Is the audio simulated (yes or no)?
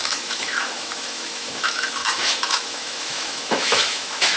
yes